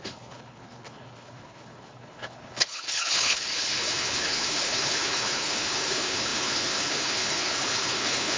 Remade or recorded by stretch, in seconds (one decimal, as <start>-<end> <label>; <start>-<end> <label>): 0.0-8.4 remade